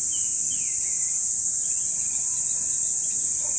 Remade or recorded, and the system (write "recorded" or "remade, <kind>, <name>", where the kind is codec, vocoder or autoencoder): recorded